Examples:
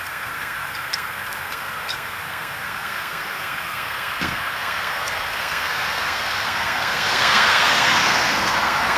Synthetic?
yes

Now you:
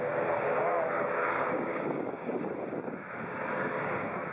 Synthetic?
yes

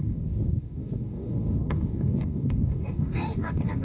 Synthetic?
yes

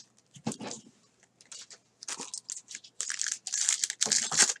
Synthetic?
no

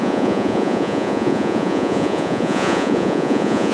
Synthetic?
yes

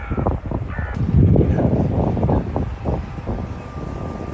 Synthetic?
no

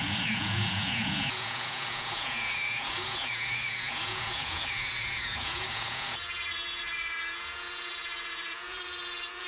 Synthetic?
yes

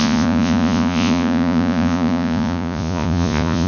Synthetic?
yes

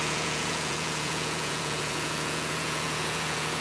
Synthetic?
yes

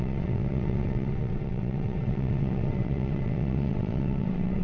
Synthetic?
yes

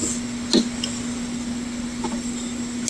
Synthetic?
no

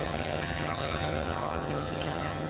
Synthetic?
yes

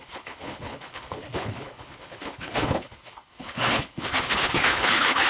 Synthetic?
yes